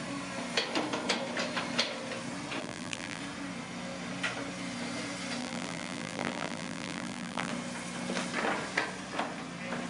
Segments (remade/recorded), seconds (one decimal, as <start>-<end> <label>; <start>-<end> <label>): 0.0-2.6 recorded; 2.6-3.2 remade; 3.2-5.4 recorded; 5.4-7.5 remade; 7.5-9.9 recorded